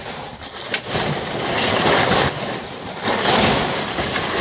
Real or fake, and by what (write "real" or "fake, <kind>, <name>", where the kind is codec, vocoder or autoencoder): real